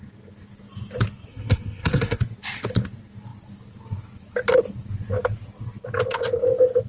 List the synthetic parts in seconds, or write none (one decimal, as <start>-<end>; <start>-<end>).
1.3-2.2